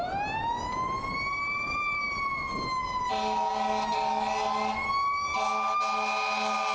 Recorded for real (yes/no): yes